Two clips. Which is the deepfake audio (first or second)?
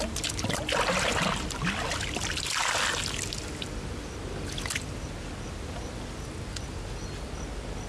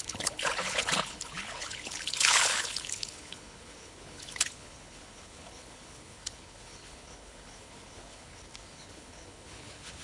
second